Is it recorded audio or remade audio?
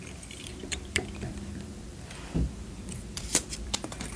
remade